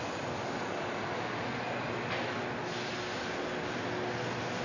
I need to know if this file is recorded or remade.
recorded